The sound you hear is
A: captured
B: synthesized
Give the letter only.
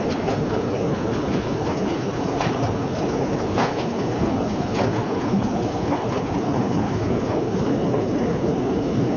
B